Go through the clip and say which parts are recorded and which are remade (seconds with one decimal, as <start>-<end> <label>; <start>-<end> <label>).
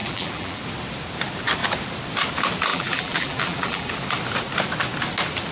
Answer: 0.0-0.6 remade; 0.6-2.7 recorded; 2.7-3.9 remade; 3.9-5.5 recorded